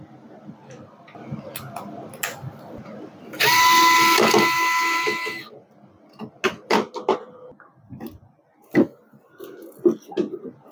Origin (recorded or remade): recorded